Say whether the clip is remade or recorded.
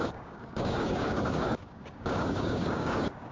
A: remade